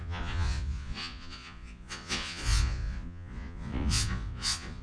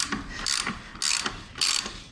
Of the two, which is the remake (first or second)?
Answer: first